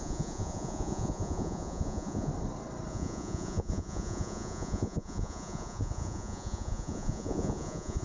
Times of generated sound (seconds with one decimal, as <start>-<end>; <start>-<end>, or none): 0.0-2.3; 2.9-8.0